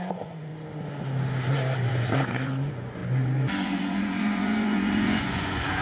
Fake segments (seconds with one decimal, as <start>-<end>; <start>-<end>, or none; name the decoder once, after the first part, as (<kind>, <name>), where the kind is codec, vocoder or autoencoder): 0.0-0.5 (vocoder, Vocos); 1.9-3.0; 3.6-5.8